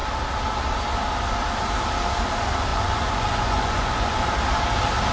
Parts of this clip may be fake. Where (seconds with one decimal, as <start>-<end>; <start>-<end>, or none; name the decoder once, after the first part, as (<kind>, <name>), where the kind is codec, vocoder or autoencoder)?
2.7-4.2 (vocoder, Vocos)